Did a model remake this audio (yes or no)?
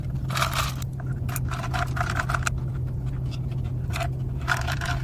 no